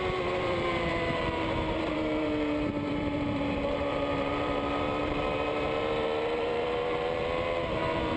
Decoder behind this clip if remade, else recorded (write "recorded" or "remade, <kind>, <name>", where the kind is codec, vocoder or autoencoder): remade, vocoder, BigVGAN v2